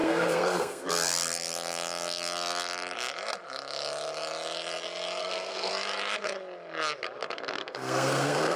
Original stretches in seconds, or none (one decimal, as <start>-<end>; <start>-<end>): 0.9-5.2; 5.7-7.2